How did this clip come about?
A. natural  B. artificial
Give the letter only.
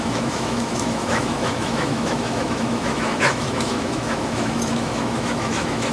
B